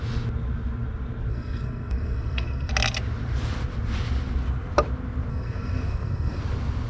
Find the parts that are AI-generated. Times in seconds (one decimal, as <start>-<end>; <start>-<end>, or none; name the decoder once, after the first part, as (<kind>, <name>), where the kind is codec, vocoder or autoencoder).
1.3-2.7 (codec, SNAC); 5.3-6.4